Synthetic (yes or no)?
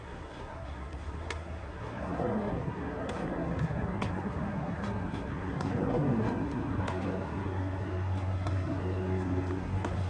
yes